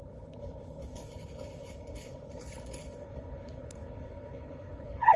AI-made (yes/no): yes